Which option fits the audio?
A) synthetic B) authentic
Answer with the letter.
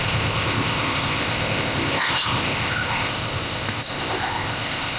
A